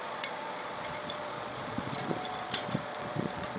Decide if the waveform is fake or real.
fake